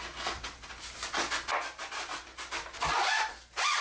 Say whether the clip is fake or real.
real